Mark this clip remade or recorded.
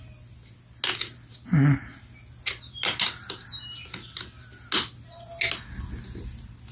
recorded